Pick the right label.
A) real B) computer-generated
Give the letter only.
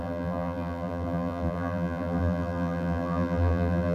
B